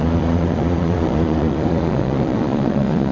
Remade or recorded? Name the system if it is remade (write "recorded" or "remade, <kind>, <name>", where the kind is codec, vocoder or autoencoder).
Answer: remade, vocoder, Vocos